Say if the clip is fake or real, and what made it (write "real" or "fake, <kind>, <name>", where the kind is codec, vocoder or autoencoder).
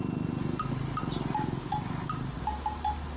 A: real